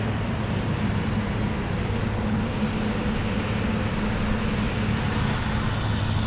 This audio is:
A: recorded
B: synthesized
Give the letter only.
A